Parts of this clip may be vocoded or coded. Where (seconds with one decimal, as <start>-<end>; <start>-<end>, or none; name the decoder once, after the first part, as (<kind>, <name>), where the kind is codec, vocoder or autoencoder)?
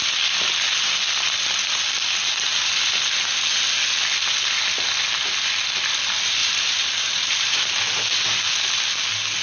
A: 6.4-7.7 (vocoder, BigVGAN v2)